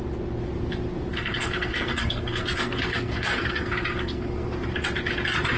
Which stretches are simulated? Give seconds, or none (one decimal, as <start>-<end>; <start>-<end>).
1.1-4.5